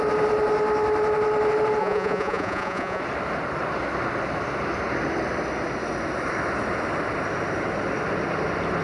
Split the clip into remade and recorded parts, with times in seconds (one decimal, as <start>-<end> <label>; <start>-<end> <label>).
0.0-1.8 recorded; 1.8-3.0 remade; 3.0-8.8 recorded

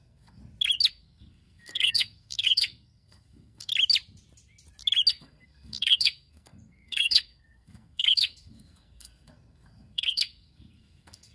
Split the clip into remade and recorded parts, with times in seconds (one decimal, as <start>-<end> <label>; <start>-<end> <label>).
0.0-0.4 remade; 0.4-0.9 recorded; 0.9-3.7 remade; 3.7-5.1 recorded; 5.1-11.3 remade

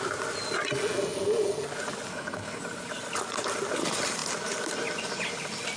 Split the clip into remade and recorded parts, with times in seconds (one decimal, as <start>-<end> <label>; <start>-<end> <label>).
0.0-2.1 recorded; 2.1-2.6 remade; 2.6-5.8 recorded

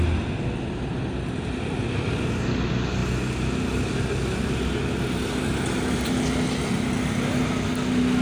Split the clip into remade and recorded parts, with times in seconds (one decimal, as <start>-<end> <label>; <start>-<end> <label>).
0.0-8.2 recorded

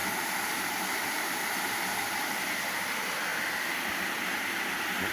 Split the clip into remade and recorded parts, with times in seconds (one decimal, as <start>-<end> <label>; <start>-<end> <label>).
0.0-5.1 recorded